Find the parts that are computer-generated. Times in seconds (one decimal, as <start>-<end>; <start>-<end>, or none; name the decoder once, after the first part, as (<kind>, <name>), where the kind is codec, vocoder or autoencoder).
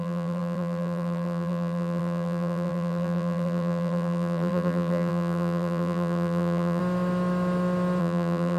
0.0-6.8 (vocoder, BigVGAN v2); 8.0-8.6